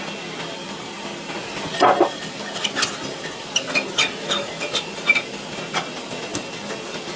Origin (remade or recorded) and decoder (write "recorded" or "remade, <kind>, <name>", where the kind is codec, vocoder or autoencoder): recorded